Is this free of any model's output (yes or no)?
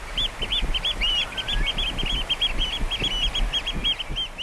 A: yes